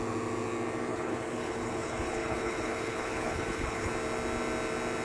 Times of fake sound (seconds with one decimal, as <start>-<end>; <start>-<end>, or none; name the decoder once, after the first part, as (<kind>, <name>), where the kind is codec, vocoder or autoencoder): 0.9-3.9 (codec, HILCodec)

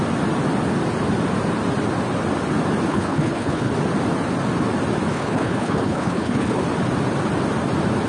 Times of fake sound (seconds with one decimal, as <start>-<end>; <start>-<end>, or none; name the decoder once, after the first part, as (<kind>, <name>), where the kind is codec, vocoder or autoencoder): 2.9-3.7 (codec, HILCodec); 5.1-6.6

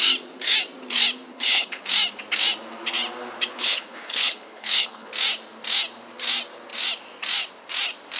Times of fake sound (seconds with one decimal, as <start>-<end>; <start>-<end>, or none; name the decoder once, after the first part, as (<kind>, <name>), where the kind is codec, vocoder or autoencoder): 1.3-1.8 (codec, HILCodec); 3.5-5.1